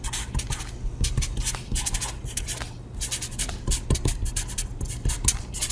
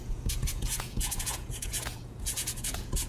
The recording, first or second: first